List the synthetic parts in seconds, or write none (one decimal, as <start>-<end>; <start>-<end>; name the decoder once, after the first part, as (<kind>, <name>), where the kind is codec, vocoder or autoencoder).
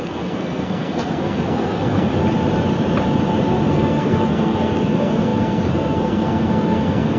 0.0-2.1 (codec, SNAC); 3.7-7.2